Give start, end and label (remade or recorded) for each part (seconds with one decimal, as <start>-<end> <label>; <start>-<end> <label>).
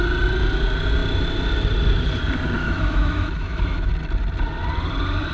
0.0-2.6 recorded; 2.6-3.9 remade; 3.9-5.3 recorded